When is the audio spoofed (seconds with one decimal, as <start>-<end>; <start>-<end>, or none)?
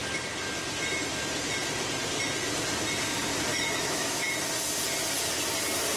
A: 3.5-4.3